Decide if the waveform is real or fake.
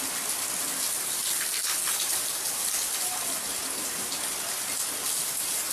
real